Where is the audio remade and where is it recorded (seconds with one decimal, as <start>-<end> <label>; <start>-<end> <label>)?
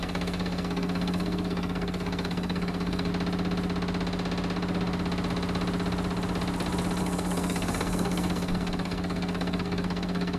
0.0-3.1 remade; 3.1-7.0 recorded; 7.0-10.4 remade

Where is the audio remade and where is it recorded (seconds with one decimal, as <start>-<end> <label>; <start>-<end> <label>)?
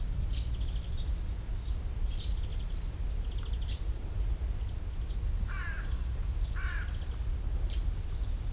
0.0-2.5 recorded; 2.5-3.0 remade; 3.0-8.5 recorded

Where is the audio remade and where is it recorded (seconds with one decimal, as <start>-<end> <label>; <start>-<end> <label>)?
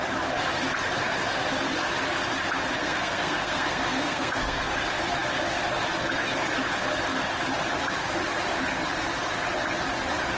0.0-2.8 recorded; 2.8-4.7 remade; 4.7-10.4 recorded